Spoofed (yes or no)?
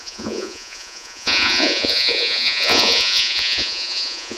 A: yes